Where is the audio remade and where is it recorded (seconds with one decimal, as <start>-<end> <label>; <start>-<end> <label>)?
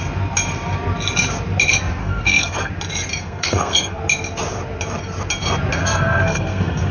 0.0-2.0 recorded; 2.0-2.7 remade; 2.7-3.2 recorded; 3.2-4.0 remade; 4.0-5.8 recorded; 5.8-6.9 remade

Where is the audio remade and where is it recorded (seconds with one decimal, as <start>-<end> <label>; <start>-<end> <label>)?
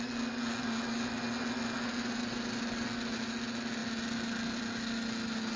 0.0-5.6 recorded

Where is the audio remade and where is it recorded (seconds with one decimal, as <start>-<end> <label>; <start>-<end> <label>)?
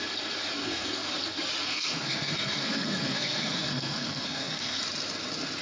0.0-0.6 recorded; 0.6-1.1 remade; 1.1-1.6 recorded; 1.6-4.8 remade; 4.8-5.6 recorded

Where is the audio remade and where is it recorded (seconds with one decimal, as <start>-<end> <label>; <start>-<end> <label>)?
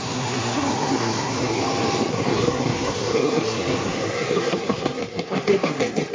0.0-1.6 remade; 1.6-2.1 recorded; 2.1-6.1 remade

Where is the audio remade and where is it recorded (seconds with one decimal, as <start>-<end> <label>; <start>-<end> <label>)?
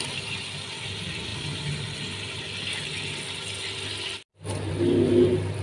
0.0-5.6 recorded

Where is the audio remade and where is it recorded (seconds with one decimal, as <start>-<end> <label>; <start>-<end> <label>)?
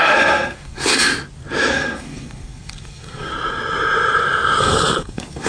0.0-1.1 remade; 1.1-1.7 recorded; 1.7-3.3 remade; 3.3-4.6 recorded; 4.6-5.5 remade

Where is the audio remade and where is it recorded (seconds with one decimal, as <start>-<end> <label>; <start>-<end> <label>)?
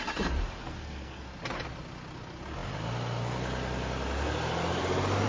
0.0-0.6 recorded; 0.6-1.2 remade; 1.2-5.3 recorded